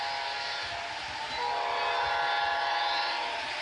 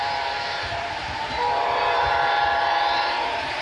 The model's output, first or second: second